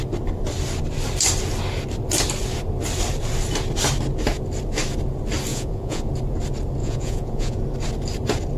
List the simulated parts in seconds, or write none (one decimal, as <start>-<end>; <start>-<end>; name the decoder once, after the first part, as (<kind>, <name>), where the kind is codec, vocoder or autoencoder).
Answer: 5.5-6.1 (vocoder, Vocos); 6.8-7.6